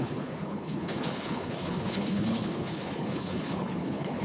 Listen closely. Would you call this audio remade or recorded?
remade